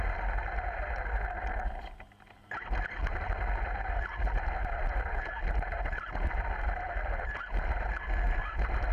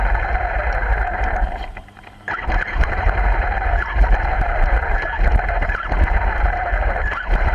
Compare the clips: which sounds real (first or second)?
first